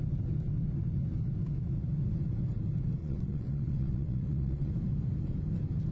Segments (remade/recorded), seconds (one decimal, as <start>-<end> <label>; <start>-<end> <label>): 0.0-3.0 recorded; 3.0-4.7 remade; 4.7-5.9 recorded